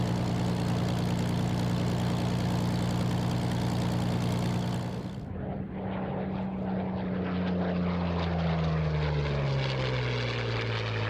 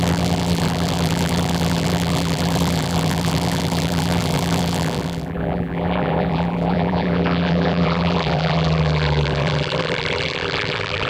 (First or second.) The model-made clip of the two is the second